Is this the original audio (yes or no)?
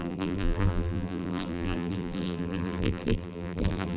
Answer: no